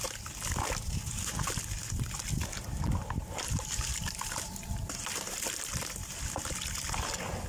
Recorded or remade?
recorded